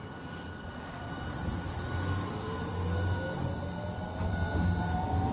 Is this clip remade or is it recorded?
recorded